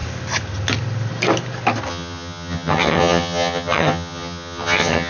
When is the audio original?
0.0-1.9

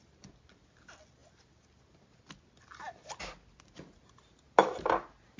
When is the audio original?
0.0-5.4

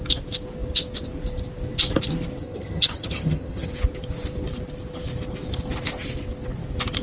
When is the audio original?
0.0-2.4; 3.7-7.0